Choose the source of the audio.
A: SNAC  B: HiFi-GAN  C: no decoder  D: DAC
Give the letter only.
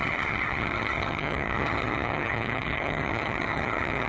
B